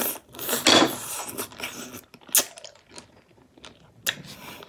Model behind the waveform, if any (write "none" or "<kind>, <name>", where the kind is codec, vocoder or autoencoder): none